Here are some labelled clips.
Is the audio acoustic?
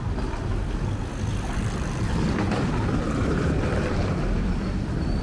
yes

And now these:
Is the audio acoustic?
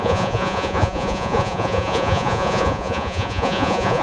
no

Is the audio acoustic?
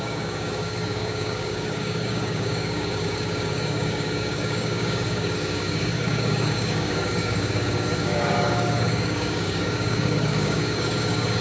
no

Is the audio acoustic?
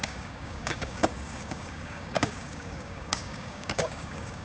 no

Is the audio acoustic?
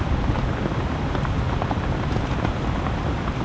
yes